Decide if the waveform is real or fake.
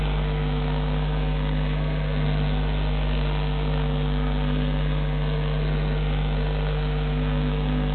fake